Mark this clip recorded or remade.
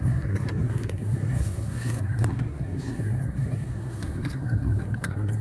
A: remade